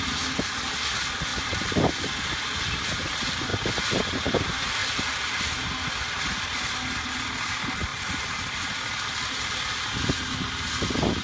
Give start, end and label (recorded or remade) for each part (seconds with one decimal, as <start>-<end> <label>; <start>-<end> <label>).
0.0-1.3 recorded; 1.3-1.9 remade; 1.9-3.5 recorded; 3.5-4.0 remade; 4.0-7.9 recorded; 7.9-9.5 remade; 9.5-11.2 recorded